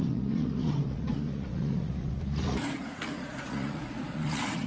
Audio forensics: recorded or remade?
remade